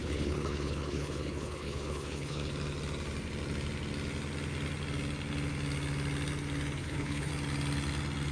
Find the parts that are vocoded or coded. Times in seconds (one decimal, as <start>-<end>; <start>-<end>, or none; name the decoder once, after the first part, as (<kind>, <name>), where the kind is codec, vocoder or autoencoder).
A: 0.0-2.5 (codec, HILCodec); 6.8-7.3